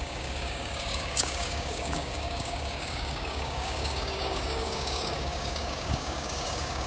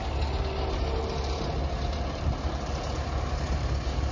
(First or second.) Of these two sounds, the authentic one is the second